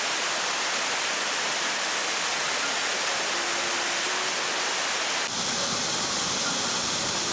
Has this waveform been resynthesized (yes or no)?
no